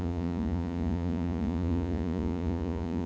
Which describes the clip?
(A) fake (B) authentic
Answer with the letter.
A